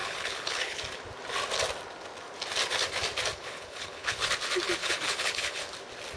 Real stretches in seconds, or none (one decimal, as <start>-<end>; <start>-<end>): 0.8-3.3; 4.3-4.8; 5.6-6.2